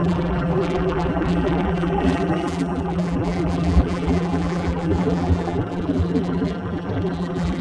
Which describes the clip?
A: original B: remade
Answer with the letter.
B